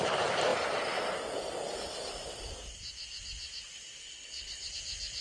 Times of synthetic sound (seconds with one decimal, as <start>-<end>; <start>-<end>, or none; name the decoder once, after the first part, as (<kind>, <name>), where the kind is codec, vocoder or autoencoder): 4.0-4.7 (codec, HILCodec)